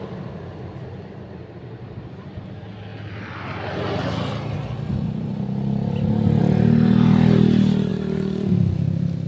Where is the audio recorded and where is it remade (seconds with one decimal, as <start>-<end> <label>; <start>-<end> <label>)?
0.0-7.9 recorded; 7.9-9.3 remade